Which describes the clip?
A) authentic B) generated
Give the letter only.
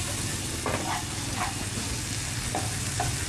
A